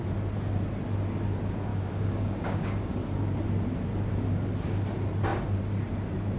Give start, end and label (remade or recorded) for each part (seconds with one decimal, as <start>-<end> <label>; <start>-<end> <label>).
0.0-1.7 recorded; 1.7-3.4 remade; 3.4-6.4 recorded